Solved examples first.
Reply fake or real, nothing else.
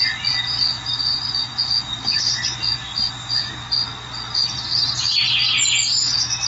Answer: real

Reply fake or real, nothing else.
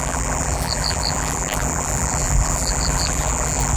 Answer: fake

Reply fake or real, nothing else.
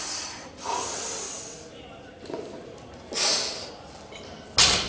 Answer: real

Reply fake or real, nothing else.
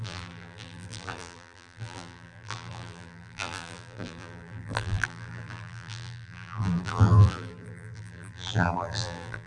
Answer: fake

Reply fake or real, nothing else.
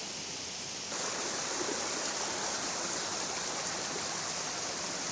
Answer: real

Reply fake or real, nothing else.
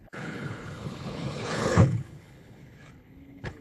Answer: fake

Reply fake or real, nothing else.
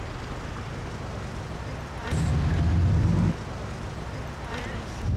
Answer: real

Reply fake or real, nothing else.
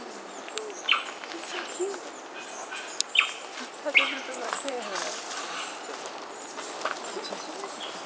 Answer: real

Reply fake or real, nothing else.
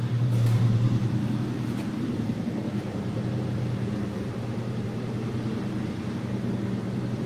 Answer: fake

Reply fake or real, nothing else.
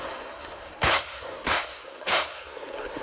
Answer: fake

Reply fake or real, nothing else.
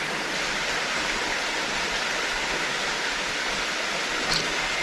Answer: real